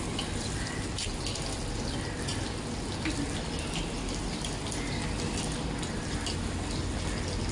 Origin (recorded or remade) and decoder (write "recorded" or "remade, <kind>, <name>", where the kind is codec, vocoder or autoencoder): recorded